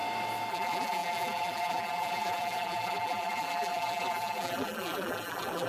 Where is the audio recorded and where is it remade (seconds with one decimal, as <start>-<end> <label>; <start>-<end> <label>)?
0.0-0.5 recorded; 0.5-5.7 remade